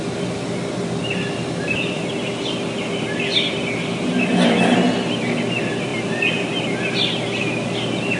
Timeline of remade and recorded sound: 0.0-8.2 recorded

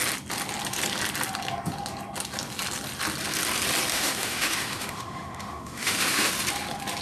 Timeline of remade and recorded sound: 0.0-3.9 recorded; 3.9-6.3 remade; 6.3-7.0 recorded